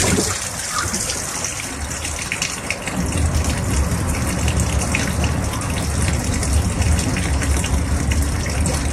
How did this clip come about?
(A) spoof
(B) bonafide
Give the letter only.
B